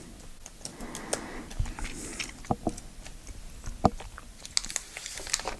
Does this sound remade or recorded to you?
recorded